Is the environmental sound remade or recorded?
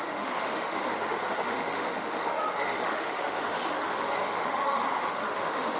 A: remade